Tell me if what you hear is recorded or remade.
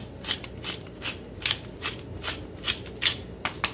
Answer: recorded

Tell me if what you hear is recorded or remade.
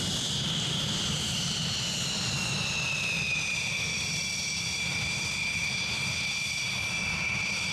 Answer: recorded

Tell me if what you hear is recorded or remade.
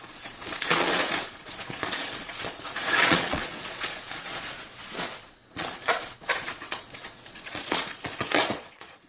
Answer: remade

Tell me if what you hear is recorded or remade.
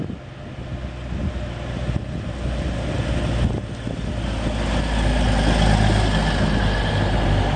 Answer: recorded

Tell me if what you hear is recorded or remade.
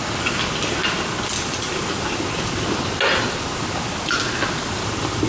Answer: recorded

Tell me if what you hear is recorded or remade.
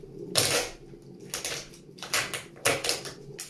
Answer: recorded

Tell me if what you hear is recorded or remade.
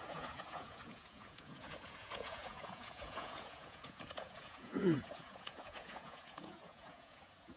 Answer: remade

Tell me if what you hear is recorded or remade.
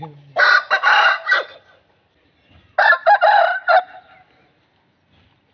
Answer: recorded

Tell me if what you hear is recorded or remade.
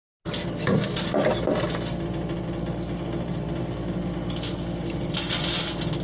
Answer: recorded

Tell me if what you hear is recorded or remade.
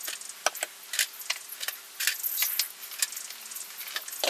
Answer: recorded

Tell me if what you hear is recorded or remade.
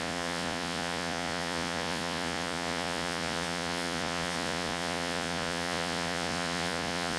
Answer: remade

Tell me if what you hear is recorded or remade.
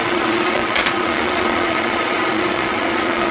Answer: remade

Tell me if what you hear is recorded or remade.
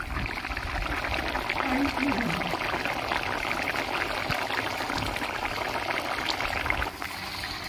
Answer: recorded